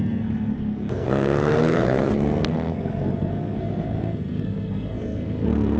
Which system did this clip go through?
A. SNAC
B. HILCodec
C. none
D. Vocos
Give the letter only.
A